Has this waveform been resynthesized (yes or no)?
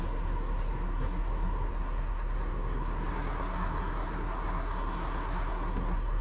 yes